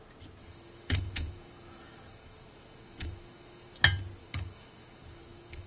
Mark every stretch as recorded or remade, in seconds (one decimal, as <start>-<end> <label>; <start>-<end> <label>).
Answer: 0.0-0.4 recorded; 0.4-3.8 remade; 3.8-4.2 recorded; 4.2-5.7 remade